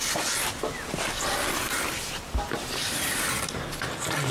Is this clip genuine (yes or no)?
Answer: yes